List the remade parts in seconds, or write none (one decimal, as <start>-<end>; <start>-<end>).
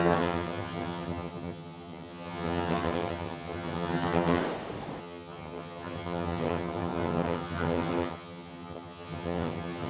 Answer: 0.0-4.4; 5.0-9.9